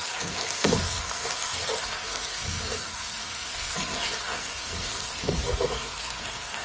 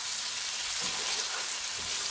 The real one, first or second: second